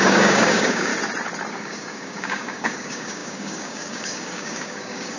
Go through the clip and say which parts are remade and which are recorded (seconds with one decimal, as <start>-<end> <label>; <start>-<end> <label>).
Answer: 0.0-0.9 remade; 0.9-1.5 recorded; 1.5-5.2 remade